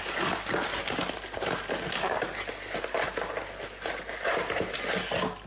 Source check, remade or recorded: recorded